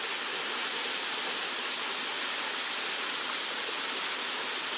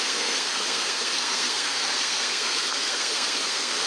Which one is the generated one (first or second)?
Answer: second